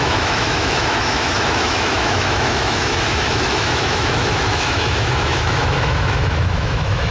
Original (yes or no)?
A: no